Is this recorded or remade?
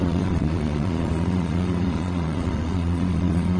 remade